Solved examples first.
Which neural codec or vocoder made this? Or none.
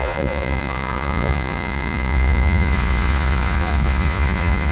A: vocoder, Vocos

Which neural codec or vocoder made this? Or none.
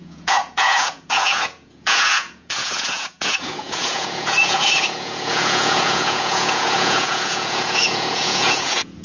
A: vocoder, Vocos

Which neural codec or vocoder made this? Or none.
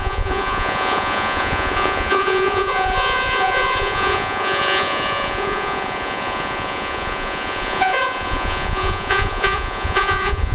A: vocoder, Vocos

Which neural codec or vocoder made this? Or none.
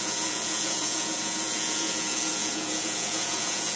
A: vocoder, Vocos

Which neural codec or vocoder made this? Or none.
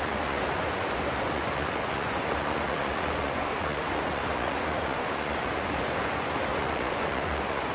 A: vocoder, Vocos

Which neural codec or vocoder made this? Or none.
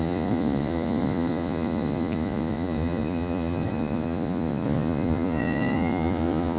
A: vocoder, Vocos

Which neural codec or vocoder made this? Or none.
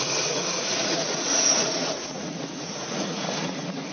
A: vocoder, Vocos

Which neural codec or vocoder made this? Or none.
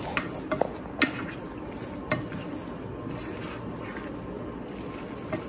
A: none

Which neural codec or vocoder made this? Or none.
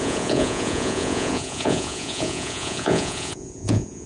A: vocoder, Vocos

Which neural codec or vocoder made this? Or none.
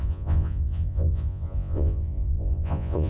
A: vocoder, Vocos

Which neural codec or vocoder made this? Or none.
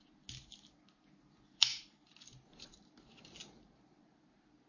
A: none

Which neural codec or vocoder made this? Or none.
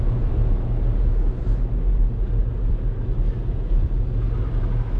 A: none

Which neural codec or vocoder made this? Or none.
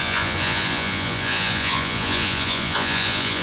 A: vocoder, Vocos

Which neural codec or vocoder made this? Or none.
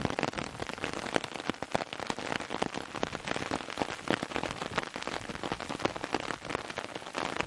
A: none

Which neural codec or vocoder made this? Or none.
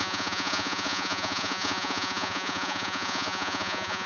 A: vocoder, Vocos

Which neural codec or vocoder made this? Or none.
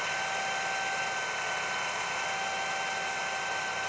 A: none